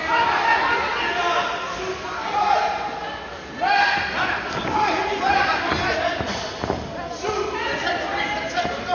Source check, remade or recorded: recorded